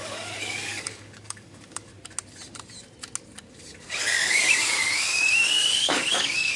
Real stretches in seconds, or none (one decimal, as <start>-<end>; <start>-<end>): 1.9-3.5